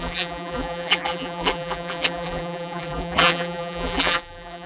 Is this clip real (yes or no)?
no